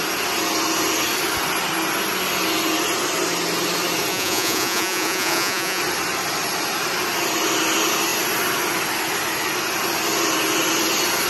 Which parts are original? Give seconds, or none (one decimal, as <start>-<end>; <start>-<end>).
0.0-4.1; 5.8-11.3